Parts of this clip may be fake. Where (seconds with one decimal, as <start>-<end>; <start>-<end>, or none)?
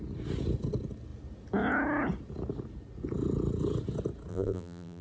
4.3-5.0